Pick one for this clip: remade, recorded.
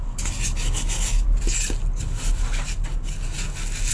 recorded